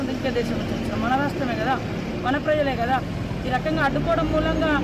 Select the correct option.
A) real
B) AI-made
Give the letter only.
A